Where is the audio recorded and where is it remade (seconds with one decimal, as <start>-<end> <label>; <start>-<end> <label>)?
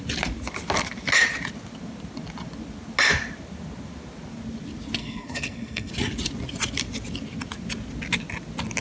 0.0-5.0 recorded; 5.0-5.9 remade; 5.9-8.8 recorded